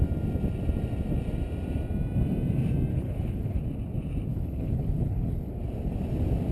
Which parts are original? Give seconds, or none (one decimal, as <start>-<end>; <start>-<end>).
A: 0.0-2.9; 3.6-4.3; 5.5-6.5